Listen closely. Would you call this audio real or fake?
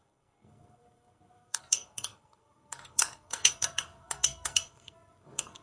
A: fake